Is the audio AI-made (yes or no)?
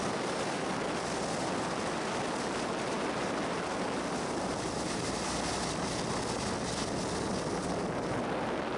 no